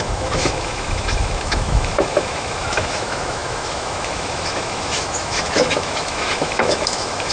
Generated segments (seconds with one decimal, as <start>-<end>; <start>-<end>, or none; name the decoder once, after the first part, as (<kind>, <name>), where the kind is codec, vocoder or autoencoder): 0.0-7.3 (autoencoder, DAC-VAE)